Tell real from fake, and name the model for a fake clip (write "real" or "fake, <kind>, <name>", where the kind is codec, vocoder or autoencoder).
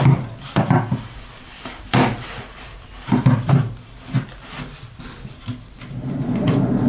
real